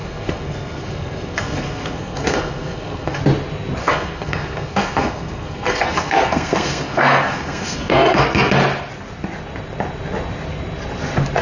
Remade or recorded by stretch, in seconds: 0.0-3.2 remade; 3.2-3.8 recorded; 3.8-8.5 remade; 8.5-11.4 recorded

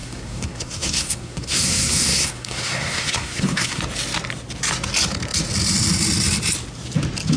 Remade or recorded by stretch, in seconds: 0.0-3.8 remade; 3.8-7.4 recorded